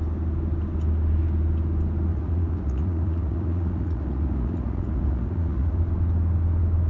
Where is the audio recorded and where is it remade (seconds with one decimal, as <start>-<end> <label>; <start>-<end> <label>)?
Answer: 0.0-2.1 recorded; 2.1-5.8 remade; 5.8-6.9 recorded